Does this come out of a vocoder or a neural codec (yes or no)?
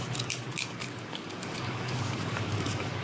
yes